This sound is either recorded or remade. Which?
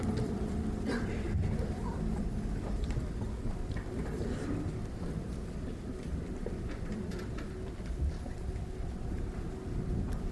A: remade